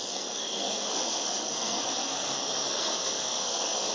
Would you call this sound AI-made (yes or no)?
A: yes